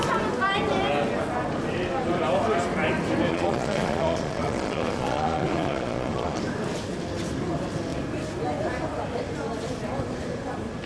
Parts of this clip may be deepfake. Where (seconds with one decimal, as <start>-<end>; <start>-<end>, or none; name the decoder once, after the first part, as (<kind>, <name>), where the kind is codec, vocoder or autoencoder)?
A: 3.3-6.4 (vocoder, Vocos)

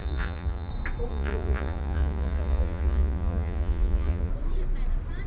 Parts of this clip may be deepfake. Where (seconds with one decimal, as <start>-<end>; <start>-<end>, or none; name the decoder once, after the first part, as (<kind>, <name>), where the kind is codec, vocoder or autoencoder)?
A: 0.0-0.7 (vocoder, Vocos); 1.1-4.3